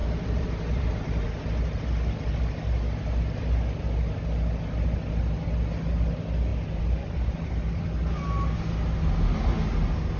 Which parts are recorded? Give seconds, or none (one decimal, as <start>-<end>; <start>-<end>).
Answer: 1.3-6.5; 7.2-10.2